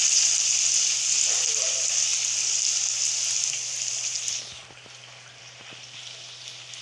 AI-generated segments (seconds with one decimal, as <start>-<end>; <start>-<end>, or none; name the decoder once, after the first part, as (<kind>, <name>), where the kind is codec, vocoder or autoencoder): none

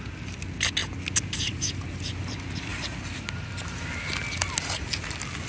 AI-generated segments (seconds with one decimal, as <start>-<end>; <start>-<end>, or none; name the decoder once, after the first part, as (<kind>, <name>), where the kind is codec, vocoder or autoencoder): none

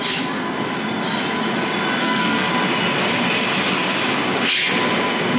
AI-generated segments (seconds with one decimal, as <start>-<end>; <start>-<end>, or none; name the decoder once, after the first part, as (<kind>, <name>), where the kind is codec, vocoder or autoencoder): 2.0-2.5 (codec, SNAC)

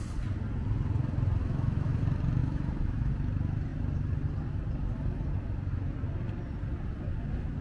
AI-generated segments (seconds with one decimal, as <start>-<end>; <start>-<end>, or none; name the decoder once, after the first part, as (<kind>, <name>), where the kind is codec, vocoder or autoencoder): 1.4-2.0 (autoencoder, DAC-VAE); 2.4-3.1

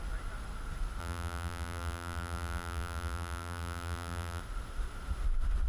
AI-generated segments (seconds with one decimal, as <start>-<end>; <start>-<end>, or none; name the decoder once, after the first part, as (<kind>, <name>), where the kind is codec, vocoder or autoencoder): 1.0-4.4 (vocoder, BigVGAN v2)